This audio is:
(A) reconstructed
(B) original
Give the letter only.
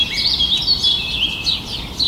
B